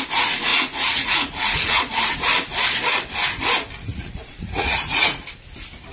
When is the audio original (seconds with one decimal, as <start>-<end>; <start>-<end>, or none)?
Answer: 0.0-0.5; 1.9-3.9; 5.2-5.9